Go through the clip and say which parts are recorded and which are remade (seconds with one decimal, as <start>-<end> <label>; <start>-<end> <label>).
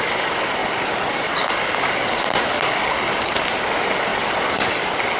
0.0-0.6 recorded; 0.6-2.2 remade; 2.2-4.1 recorded; 4.1-4.7 remade; 4.7-5.2 recorded